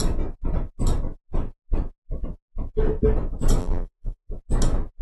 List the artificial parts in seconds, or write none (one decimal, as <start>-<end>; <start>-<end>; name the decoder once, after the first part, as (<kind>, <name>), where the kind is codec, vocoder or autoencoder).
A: 3.6-4.3 (vocoder, BigVGAN v2)